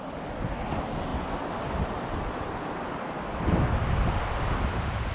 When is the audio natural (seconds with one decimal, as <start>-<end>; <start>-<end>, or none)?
0.0-5.1